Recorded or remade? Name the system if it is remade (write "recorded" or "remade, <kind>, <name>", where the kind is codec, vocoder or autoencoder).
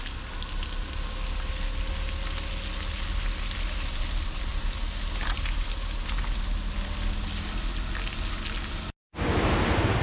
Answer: recorded